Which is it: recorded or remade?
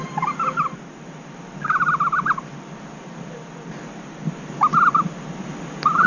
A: recorded